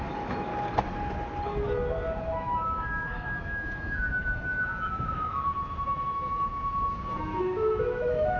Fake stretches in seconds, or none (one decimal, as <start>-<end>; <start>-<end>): 0.0-0.5; 2.3-8.4